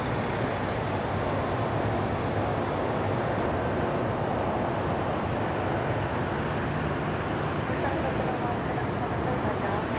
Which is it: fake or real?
real